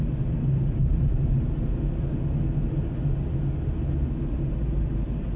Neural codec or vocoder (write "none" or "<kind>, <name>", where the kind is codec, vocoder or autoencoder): none